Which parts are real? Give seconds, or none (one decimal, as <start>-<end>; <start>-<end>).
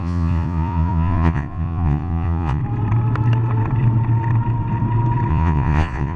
2.6-5.3